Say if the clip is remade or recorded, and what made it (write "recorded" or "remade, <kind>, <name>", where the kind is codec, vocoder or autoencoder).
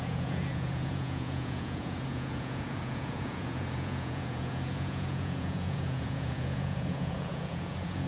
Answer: remade, vocoder, Vocos